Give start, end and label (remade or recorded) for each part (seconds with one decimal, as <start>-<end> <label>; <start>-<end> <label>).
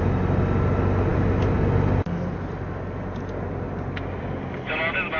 0.0-5.2 recorded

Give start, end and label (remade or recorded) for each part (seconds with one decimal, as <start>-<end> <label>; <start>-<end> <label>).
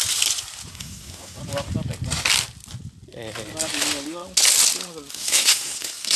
0.0-0.7 recorded; 0.7-1.4 remade; 1.4-5.1 recorded; 5.1-6.2 remade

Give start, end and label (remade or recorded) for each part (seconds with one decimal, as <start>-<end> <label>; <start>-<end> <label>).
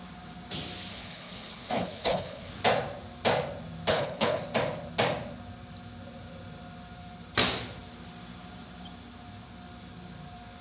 0.0-0.9 recorded; 0.9-2.5 remade; 2.5-3.9 recorded; 3.9-4.4 remade; 4.4-10.6 recorded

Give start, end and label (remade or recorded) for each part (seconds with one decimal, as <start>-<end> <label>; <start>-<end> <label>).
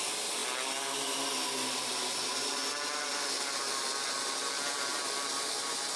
0.0-6.0 recorded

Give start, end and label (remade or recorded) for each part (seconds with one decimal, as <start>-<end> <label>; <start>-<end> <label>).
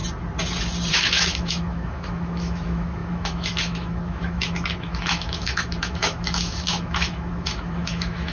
0.0-0.9 recorded; 0.9-8.3 remade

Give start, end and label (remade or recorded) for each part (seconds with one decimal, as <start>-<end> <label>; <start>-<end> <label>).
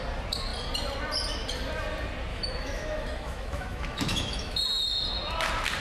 0.0-2.3 recorded; 2.3-4.6 remade; 4.6-5.8 recorded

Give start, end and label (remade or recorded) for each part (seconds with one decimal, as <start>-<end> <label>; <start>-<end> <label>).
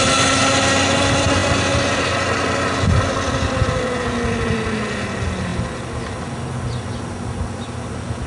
0.0-8.3 recorded